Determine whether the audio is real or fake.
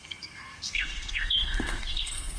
fake